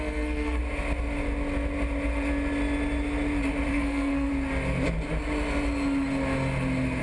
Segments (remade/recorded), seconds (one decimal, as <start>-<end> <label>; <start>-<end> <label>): 0.0-0.6 remade; 0.6-3.7 recorded; 3.7-4.3 remade; 4.3-7.0 recorded